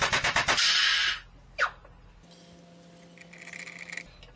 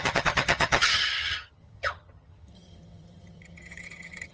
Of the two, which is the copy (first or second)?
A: second